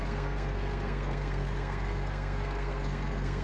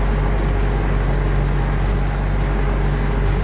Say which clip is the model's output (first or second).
first